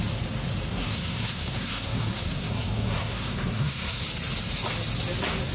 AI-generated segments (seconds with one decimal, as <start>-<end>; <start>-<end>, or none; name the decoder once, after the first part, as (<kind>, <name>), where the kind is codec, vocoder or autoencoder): 0.7-4.0 (codec, SNAC)